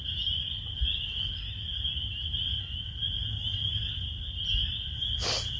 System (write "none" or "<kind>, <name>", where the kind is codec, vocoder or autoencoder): none